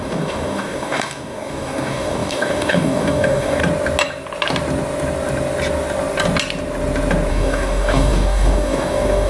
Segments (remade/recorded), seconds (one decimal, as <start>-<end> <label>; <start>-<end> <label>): 0.0-3.6 remade; 3.6-7.3 recorded; 7.3-9.3 remade